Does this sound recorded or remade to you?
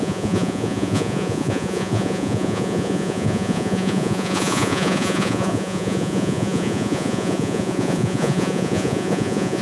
remade